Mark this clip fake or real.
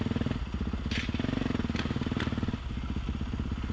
real